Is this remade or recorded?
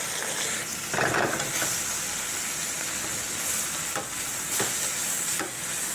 recorded